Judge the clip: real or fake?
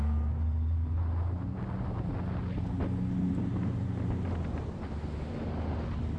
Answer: real